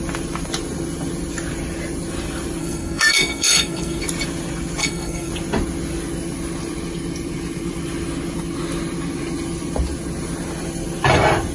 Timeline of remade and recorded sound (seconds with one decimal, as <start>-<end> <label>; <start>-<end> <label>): 0.0-2.6 recorded; 2.6-4.0 remade; 4.0-4.8 recorded; 4.8-5.3 remade; 5.3-11.5 recorded